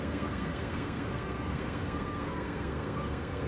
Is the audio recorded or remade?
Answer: remade